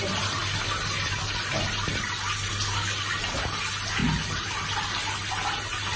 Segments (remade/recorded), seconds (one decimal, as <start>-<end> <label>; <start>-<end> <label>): 0.0-6.0 recorded